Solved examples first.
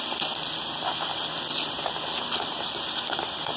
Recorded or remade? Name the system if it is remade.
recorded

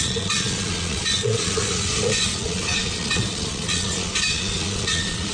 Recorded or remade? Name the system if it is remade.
remade, vocoder, Vocos